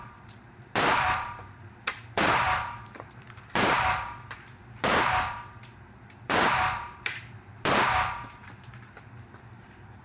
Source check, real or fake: fake